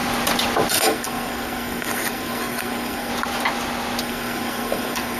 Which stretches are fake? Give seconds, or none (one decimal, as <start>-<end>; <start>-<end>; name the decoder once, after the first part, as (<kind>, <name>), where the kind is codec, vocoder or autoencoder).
0.7-3.1 (codec, SNAC); 4.0-5.2